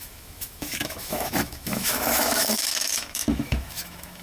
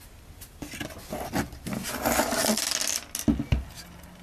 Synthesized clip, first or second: first